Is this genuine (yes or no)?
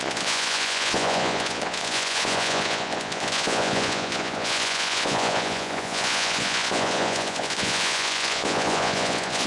no